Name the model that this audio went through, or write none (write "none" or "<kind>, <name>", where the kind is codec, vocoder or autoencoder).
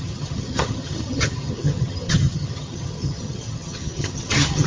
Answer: vocoder, HiFi-GAN